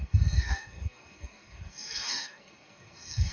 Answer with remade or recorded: remade